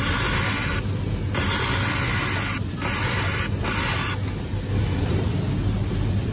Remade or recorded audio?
recorded